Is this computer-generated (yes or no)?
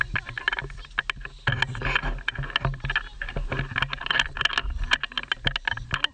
no